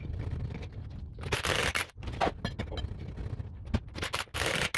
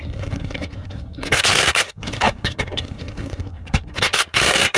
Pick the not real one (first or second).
second